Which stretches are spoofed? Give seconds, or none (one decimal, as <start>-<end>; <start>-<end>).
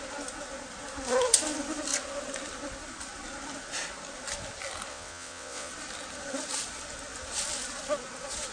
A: 4.9-5.7